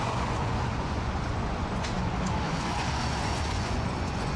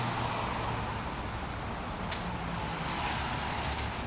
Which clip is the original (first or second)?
second